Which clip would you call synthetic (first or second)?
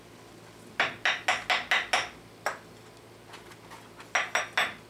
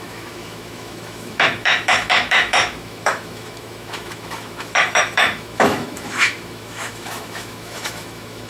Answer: second